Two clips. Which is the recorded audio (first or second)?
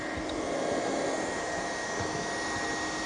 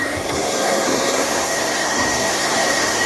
first